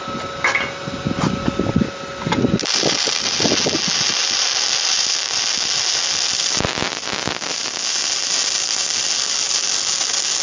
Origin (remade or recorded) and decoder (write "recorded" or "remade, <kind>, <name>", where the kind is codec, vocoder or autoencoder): recorded